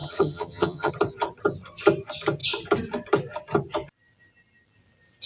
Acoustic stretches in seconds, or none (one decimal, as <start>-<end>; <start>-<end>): 0.9-5.3